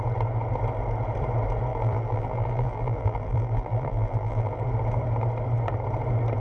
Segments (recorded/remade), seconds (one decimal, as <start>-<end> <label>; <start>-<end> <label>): 0.0-1.7 recorded; 1.7-4.6 remade; 4.6-6.4 recorded